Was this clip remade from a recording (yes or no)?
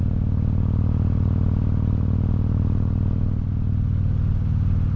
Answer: no